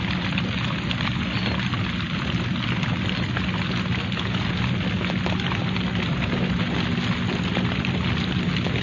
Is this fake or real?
real